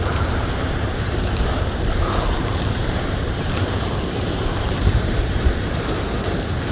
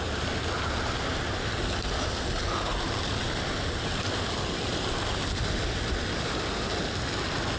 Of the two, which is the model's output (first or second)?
first